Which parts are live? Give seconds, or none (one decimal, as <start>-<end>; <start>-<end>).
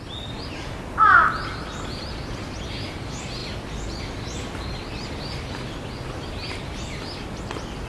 0.0-7.9